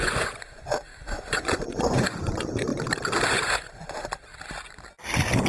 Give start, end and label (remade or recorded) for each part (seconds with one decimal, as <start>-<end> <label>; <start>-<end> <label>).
0.0-2.7 remade; 2.7-3.3 recorded; 3.3-4.3 remade; 4.3-5.5 recorded